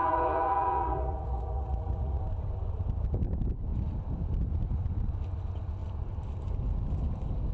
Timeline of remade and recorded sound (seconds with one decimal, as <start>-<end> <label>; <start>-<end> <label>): 0.0-2.2 remade; 2.2-7.5 recorded